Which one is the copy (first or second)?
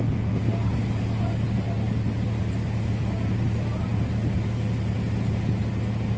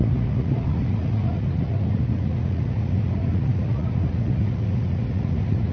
second